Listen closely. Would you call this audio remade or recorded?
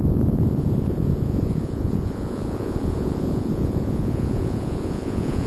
remade